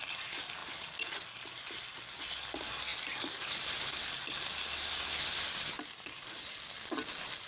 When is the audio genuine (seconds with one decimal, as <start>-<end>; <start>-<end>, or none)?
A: 0.0-7.5